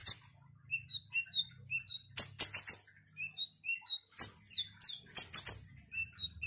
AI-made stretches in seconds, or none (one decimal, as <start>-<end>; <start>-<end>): none